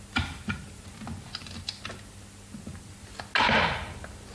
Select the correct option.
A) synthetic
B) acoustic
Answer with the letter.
B